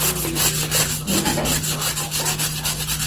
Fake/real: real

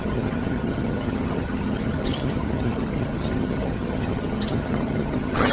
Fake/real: fake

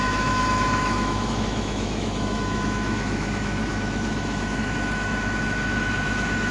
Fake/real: fake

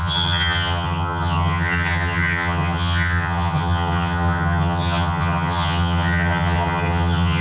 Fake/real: fake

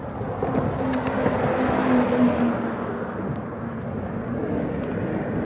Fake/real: real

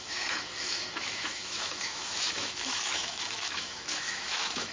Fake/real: fake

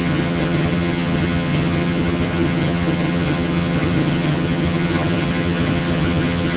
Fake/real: fake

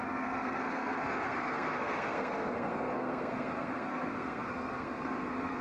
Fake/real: fake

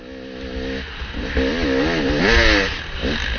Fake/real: real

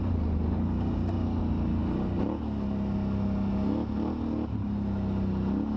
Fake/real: real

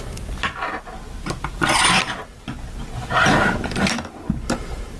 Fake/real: real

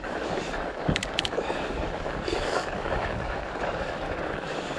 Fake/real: fake